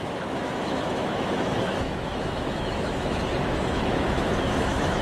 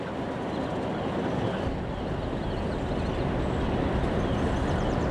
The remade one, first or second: first